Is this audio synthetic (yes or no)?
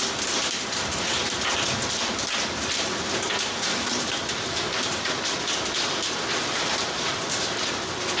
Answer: no